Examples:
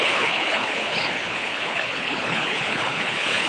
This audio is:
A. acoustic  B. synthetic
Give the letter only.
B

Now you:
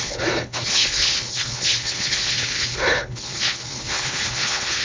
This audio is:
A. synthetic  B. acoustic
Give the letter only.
A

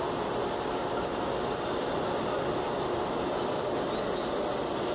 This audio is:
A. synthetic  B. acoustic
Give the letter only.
B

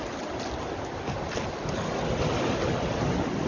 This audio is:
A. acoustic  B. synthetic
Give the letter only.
A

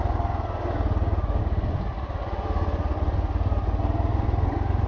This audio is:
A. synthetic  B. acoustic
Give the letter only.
B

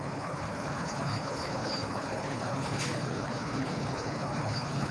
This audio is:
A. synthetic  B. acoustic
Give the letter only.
A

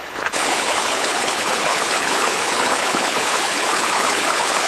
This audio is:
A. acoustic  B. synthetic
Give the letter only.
B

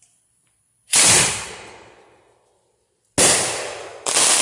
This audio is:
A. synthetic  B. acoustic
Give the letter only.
B